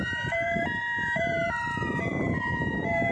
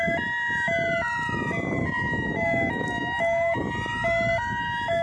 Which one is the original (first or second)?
second